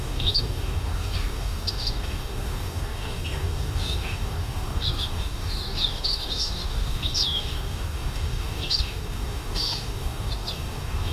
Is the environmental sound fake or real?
fake